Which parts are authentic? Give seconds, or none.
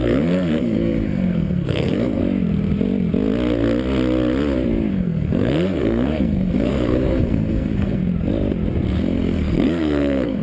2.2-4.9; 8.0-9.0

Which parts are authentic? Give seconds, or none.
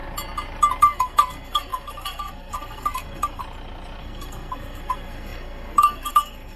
0.0-0.8; 3.4-4.0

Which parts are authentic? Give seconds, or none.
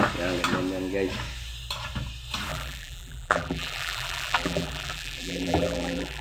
0.0-2.5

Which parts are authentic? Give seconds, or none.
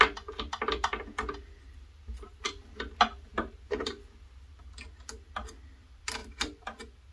0.0-3.3; 4.0-6.2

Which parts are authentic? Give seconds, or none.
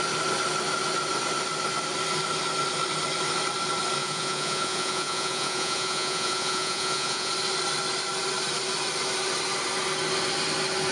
0.0-4.0; 7.3-10.9